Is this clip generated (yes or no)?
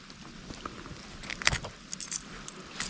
no